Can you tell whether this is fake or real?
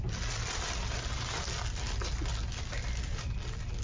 real